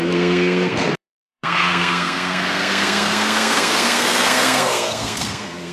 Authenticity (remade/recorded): remade